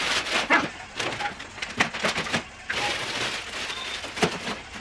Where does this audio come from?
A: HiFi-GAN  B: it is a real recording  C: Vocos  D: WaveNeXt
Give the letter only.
B